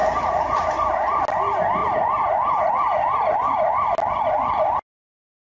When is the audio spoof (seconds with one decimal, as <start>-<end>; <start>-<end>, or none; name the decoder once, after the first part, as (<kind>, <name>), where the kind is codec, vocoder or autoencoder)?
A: none